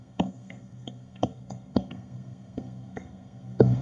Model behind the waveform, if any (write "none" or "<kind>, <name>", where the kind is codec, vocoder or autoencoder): codec, SNAC